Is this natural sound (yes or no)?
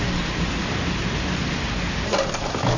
yes